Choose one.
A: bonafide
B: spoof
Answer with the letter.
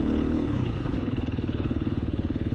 B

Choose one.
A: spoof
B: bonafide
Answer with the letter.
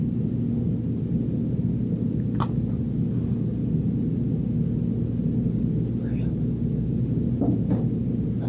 B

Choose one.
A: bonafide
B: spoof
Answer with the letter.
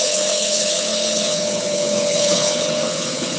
B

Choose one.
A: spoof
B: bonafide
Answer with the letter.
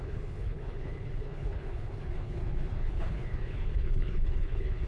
A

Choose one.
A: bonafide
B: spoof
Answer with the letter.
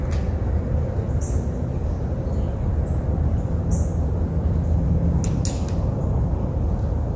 A